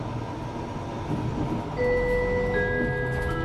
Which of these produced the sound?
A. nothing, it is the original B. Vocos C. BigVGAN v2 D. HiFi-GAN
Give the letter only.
A